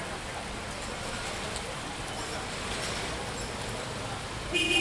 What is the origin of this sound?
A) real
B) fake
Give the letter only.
B